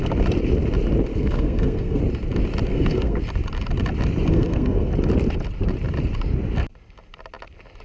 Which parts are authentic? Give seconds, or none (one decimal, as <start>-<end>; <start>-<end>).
0.0-1.1; 2.0-2.7; 3.2-4.3; 4.9-7.8